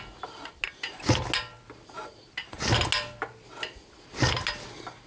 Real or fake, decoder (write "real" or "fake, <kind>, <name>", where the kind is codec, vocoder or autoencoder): real